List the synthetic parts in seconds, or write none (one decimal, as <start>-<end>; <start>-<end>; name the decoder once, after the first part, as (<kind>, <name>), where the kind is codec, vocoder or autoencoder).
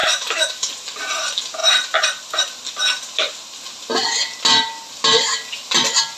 0.0-0.7 (autoencoder, DAC-VAE)